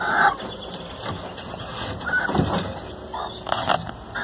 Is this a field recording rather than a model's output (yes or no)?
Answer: yes